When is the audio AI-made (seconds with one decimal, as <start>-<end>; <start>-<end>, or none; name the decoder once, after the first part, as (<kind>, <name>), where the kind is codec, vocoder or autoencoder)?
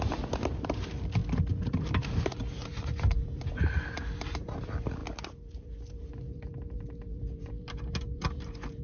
0.0-1.2 (vocoder, BigVGAN v2); 1.7-8.8